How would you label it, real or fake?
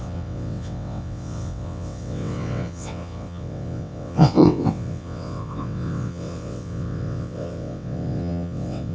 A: fake